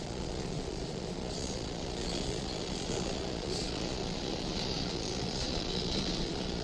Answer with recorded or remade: remade